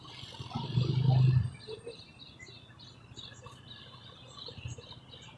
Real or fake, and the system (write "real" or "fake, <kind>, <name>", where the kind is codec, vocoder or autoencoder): real